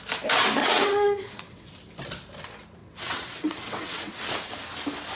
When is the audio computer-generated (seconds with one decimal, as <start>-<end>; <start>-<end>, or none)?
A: 0.6-1.7; 2.8-4.2